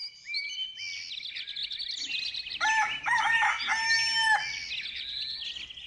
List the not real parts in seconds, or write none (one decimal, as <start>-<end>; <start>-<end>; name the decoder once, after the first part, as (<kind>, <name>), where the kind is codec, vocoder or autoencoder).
none